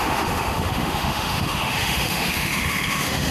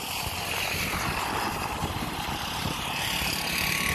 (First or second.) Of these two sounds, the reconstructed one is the first